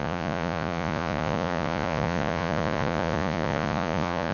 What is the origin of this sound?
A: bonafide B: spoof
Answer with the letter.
B